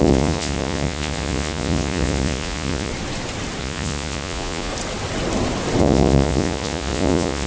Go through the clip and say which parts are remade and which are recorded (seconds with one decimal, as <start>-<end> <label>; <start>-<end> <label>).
0.0-2.9 remade; 2.9-3.6 recorded; 3.6-4.7 remade; 4.7-5.8 recorded; 5.8-7.5 remade